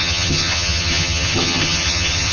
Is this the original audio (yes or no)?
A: no